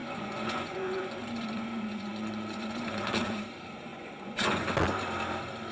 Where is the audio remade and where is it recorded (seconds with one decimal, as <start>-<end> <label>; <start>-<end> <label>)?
0.0-3.4 remade; 3.4-3.9 recorded; 3.9-4.7 remade; 4.7-5.7 recorded